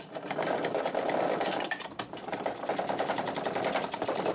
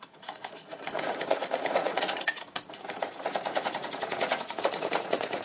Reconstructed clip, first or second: second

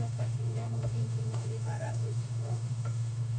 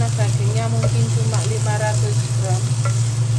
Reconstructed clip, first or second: first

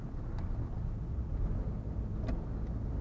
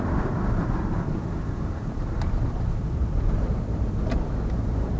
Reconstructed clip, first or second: second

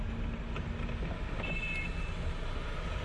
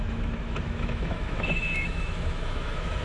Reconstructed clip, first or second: second